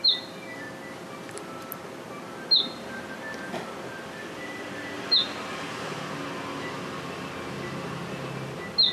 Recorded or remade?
recorded